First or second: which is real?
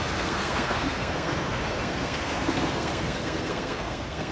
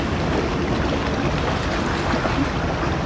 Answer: second